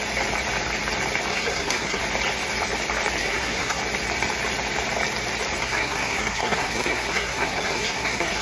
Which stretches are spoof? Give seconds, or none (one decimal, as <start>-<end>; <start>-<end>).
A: 1.3-2.0; 3.2-3.8; 5.6-8.4